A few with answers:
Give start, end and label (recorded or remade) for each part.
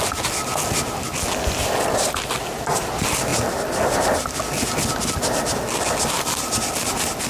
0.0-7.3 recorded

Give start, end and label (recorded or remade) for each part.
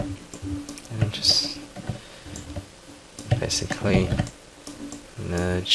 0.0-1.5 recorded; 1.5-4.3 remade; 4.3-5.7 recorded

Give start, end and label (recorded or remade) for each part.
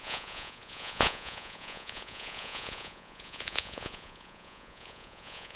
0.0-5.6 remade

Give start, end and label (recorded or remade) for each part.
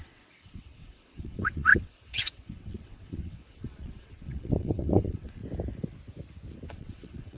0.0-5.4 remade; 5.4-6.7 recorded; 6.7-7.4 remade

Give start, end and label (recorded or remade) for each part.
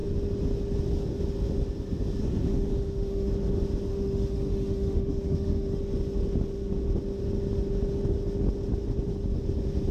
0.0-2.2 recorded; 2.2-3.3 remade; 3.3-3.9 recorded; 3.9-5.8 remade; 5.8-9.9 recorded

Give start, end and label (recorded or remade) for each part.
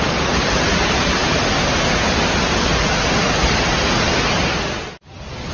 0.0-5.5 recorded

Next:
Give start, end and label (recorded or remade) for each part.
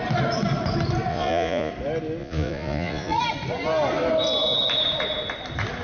0.0-1.1 recorded; 1.1-1.7 remade; 1.7-2.2 recorded; 2.2-3.2 remade; 3.2-5.8 recorded